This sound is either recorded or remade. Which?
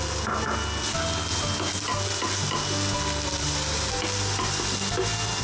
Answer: recorded